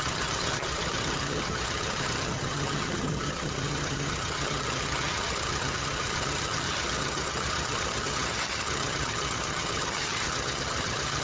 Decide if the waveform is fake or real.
fake